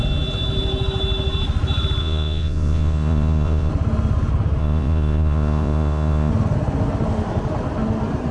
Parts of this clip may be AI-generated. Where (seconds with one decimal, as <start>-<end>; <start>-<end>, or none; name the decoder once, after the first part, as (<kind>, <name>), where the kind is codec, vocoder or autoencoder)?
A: 2.0-3.7 (vocoder, Vocos); 4.6-6.3